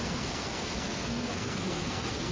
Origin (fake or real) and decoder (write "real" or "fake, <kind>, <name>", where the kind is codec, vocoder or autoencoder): fake, codec, SNAC